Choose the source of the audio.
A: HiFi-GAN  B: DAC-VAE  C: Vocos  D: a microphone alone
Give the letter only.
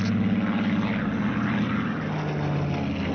D